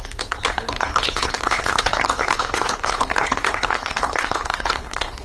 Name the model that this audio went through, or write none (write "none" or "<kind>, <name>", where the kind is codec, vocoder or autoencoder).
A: codec, HILCodec